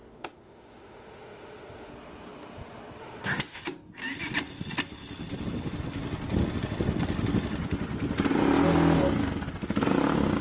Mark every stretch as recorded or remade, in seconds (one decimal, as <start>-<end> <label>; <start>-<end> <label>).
0.0-1.9 remade; 1.9-3.0 recorded; 3.0-3.6 remade; 3.6-10.4 recorded